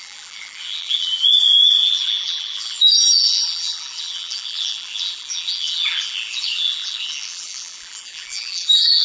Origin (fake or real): fake